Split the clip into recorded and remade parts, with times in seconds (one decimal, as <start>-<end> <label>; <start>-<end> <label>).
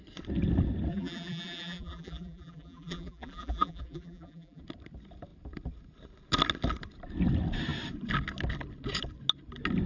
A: 0.0-0.9 recorded; 0.9-4.6 remade; 4.6-9.9 recorded